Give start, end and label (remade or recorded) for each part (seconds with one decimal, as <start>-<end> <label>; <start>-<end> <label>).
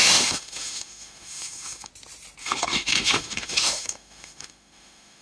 0.0-1.9 remade; 1.9-2.4 recorded; 2.4-5.2 remade